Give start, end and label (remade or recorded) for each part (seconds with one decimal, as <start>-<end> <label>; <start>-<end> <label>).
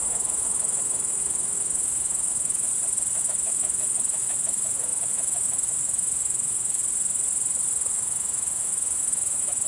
0.0-2.7 remade; 2.7-3.2 recorded; 3.2-6.8 remade; 6.8-7.9 recorded; 7.9-9.7 remade